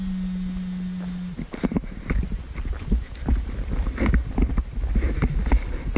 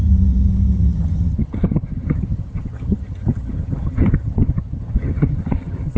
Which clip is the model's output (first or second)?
second